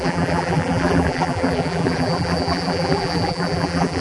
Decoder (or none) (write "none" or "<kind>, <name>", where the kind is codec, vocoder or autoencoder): vocoder, BigVGAN v2